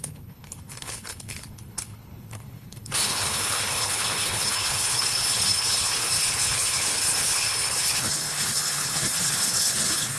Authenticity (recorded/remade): remade